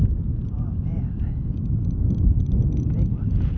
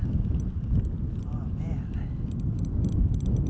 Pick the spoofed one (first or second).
first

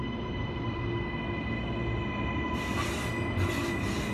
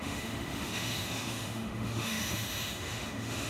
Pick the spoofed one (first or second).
second